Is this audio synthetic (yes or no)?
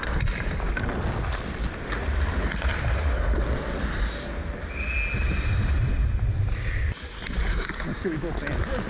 no